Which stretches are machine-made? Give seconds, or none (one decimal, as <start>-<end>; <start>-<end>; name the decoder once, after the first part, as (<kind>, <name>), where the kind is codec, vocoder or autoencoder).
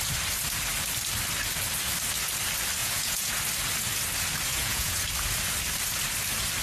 2.8-3.3 (vocoder, Vocos); 4.5-5.0